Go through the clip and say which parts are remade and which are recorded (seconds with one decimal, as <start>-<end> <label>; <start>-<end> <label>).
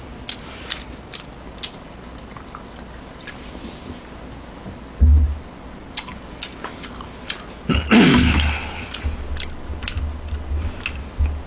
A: 0.0-11.5 recorded